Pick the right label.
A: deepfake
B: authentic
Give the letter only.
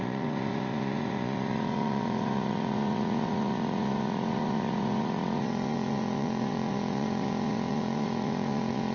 A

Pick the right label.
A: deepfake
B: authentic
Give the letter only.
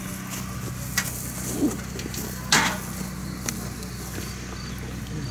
B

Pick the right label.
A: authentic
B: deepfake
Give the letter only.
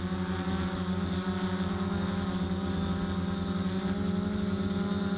A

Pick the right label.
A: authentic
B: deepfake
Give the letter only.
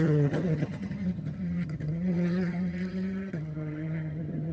B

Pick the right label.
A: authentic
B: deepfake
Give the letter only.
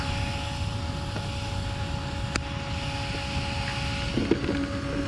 A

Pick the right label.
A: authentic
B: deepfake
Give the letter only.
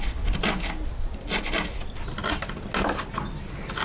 A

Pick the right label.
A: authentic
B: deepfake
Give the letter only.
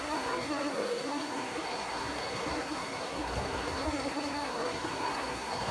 B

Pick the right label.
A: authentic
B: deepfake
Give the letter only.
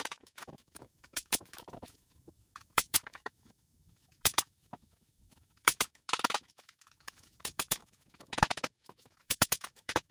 B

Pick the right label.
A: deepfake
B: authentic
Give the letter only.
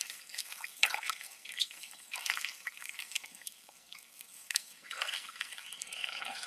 A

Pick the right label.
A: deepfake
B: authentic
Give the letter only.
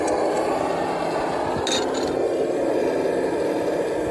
B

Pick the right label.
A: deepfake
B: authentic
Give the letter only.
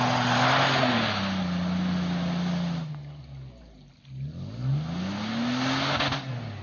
B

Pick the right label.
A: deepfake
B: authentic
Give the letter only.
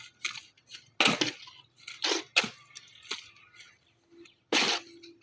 B